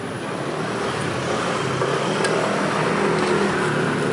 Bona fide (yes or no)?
yes